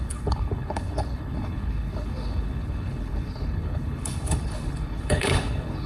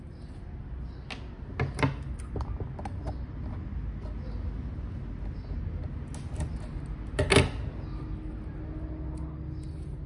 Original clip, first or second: second